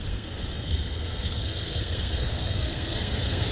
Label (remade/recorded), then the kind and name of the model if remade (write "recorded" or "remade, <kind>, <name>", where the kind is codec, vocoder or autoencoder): remade, codec, SNAC